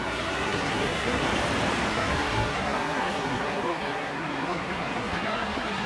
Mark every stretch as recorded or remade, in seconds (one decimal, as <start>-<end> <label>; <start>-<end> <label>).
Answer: 0.0-1.3 remade; 1.3-1.9 recorded; 1.9-5.9 remade